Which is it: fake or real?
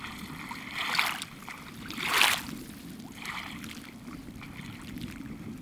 real